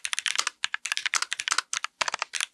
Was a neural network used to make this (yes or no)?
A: no